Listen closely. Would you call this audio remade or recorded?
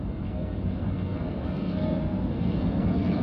remade